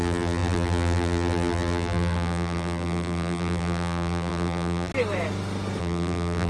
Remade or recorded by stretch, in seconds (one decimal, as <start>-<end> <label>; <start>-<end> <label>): 0.0-4.9 remade; 4.9-5.8 recorded; 5.8-6.5 remade